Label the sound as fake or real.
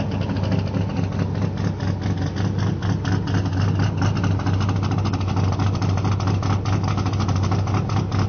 real